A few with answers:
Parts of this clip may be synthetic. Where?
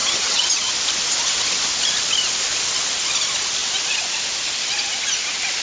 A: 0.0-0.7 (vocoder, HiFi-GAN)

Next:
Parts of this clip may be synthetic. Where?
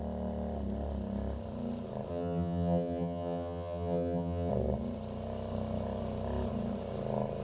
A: 2.1-4.5 (vocoder, HiFi-GAN)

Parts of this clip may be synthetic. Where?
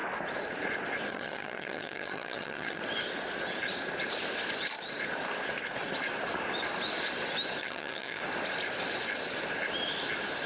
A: 1.1-2.8 (vocoder, HiFi-GAN); 7.6-8.2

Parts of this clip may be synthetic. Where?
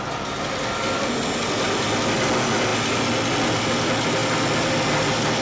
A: none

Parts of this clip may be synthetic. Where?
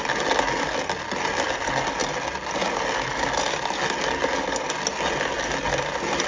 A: none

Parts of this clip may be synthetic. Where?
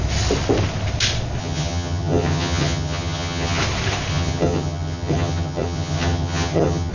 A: 1.4-3.6 (vocoder, HiFi-GAN); 4.1-6.9